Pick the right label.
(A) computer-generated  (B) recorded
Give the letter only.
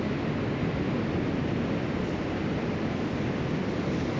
B